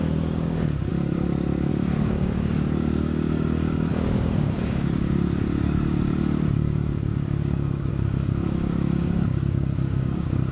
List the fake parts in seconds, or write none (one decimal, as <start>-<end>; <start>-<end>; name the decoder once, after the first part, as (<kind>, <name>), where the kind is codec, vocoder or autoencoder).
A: 0.0-0.9 (codec, DAC); 1.7-10.5